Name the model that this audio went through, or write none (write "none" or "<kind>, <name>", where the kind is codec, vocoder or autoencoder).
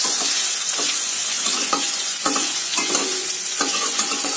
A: vocoder, Vocos